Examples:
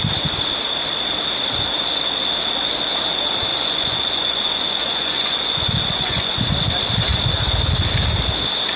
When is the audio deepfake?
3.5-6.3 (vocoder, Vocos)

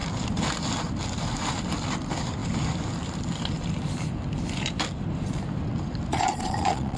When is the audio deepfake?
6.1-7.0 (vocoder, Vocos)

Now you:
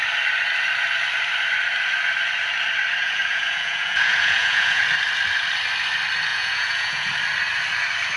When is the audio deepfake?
3.0-4.8 (vocoder, Vocos); 6.3-7.1

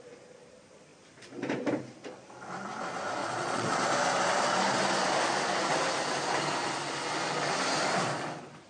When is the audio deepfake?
3.2-3.8 (vocoder, Vocos)

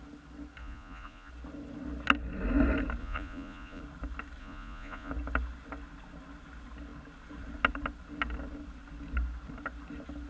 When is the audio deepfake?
0.6-1.3 (vocoder, Vocos); 3.0-3.8; 4.4-5.1

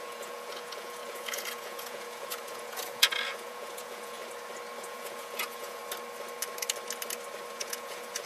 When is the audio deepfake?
0.0-4.2 (vocoder, Vocos); 4.8-5.8; 7.5-8.3

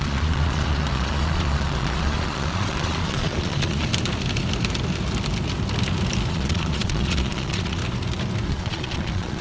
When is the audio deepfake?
0.0-3.9 (vocoder, Vocos); 6.3-7.8; 8.5-9.4

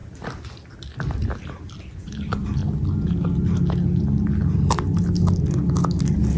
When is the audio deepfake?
1.8-2.6 (vocoder, Vocos)